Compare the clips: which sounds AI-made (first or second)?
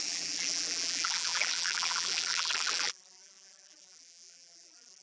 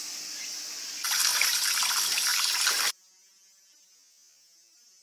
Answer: first